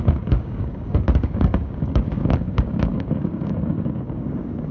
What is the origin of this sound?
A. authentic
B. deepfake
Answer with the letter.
B